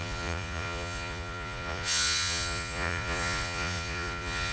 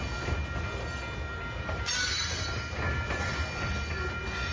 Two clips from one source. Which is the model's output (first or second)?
first